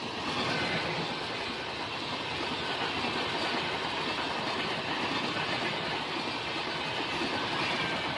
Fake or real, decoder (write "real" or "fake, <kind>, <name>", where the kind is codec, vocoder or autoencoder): real